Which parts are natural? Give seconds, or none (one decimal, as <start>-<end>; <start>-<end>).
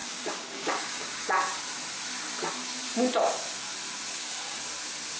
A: 1.2-4.1; 4.6-5.2